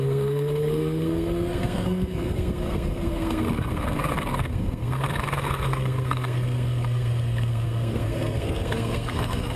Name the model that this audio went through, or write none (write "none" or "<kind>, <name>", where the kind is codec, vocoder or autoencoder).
codec, SNAC